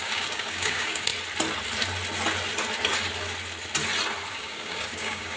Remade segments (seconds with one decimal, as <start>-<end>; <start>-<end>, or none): 0.0-1.1; 4.3-5.4